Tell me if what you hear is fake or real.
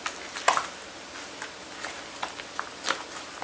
real